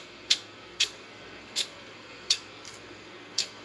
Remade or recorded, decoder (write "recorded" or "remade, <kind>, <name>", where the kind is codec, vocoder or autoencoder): remade, codec, SNAC